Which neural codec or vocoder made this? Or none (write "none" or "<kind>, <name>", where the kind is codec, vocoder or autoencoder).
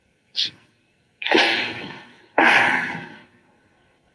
codec, SNAC